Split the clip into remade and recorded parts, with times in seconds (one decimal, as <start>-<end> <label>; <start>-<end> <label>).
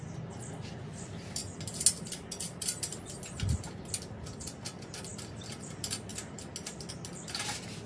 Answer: 0.0-7.9 recorded